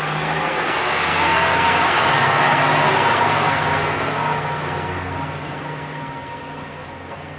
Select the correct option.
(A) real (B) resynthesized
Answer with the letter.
B